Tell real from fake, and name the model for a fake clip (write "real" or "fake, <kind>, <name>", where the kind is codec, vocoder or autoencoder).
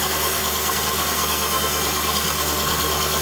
fake, codec, SNAC